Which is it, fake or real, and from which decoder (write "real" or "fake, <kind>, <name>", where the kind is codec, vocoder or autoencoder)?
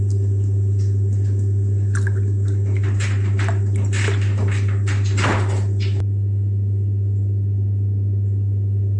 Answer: real